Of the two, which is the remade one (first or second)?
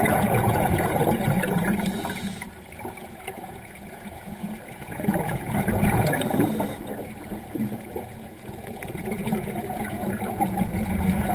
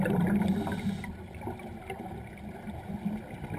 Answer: first